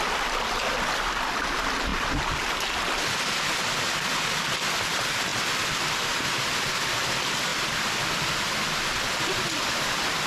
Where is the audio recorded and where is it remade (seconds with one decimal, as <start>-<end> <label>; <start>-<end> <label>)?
0.0-1.9 recorded; 1.9-2.6 remade; 2.6-10.3 recorded

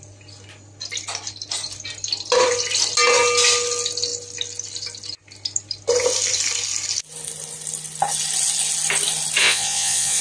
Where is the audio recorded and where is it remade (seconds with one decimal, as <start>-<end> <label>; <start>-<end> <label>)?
0.0-9.4 recorded; 9.4-10.2 remade

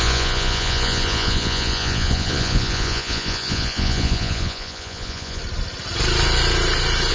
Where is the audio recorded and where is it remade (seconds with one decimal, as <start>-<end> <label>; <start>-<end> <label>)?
0.0-5.4 remade; 5.4-7.1 recorded

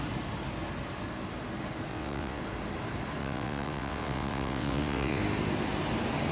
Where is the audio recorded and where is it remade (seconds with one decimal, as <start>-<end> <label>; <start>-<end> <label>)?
0.0-1.9 recorded; 1.9-2.4 remade; 2.4-3.2 recorded; 3.2-5.2 remade; 5.2-6.3 recorded

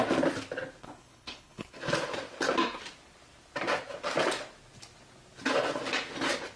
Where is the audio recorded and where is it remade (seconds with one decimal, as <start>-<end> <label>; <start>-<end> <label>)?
0.0-0.8 recorded; 0.8-1.8 remade; 1.8-6.6 recorded

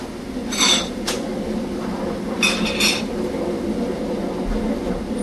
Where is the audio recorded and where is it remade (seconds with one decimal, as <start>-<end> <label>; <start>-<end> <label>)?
0.0-5.2 recorded

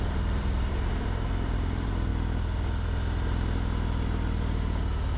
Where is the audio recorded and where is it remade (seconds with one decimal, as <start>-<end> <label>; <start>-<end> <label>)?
0.0-2.1 remade; 2.1-5.2 recorded

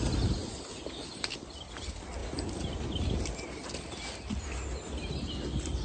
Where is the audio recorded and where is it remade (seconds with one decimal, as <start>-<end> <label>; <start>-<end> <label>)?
0.0-5.8 recorded